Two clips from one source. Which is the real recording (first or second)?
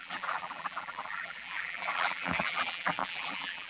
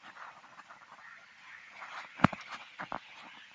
second